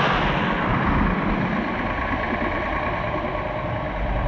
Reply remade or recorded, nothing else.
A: recorded